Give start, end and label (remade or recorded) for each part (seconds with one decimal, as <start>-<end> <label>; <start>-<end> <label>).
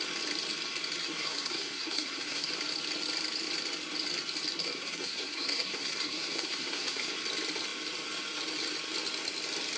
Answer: 0.0-1.0 recorded; 1.0-2.5 remade; 2.5-4.6 recorded; 4.6-7.1 remade; 7.1-9.8 recorded